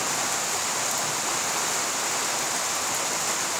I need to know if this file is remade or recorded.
recorded